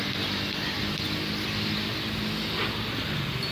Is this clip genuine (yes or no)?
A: yes